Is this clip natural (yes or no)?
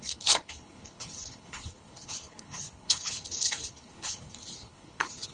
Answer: no